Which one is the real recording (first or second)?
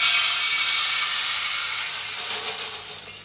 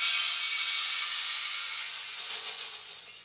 first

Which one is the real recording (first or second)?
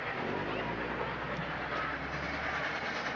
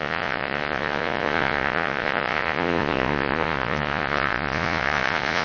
first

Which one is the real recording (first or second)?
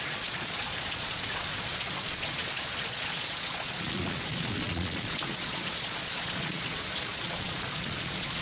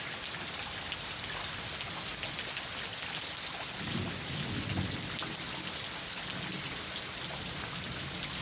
second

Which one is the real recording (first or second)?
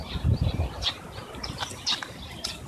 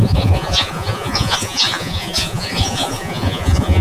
first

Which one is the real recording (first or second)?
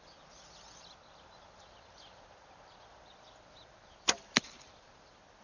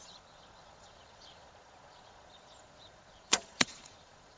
first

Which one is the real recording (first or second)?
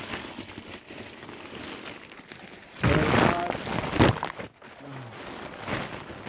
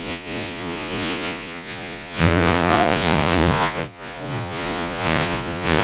first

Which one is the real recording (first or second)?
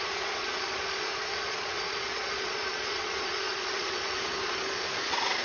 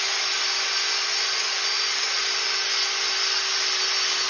second